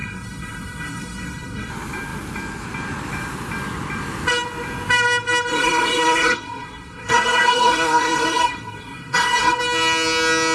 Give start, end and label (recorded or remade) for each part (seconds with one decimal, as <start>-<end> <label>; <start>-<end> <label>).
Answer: 0.0-1.7 remade; 1.7-5.5 recorded; 5.5-9.6 remade; 9.6-10.5 recorded